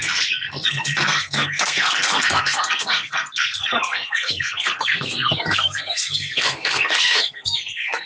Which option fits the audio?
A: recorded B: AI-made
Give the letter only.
B